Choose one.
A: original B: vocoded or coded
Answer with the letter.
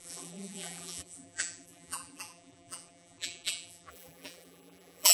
B